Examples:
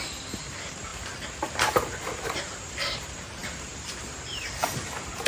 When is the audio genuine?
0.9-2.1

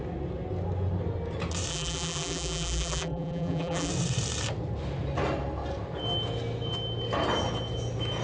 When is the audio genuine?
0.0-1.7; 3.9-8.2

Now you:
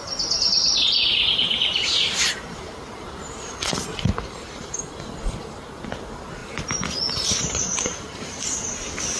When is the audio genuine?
0.0-1.0; 3.6-6.4; 8.4-9.2

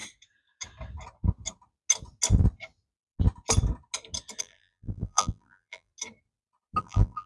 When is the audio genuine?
0.0-4.4; 5.9-6.8

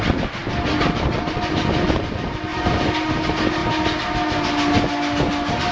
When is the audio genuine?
0.0-2.5; 3.1-5.7

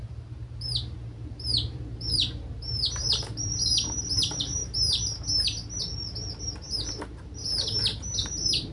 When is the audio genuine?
4.6-7.0